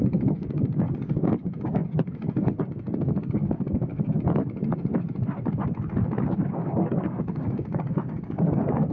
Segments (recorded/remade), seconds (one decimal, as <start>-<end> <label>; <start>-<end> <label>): 0.0-1.8 remade; 1.8-2.6 recorded; 2.6-3.9 remade; 3.9-6.5 recorded; 6.5-8.9 remade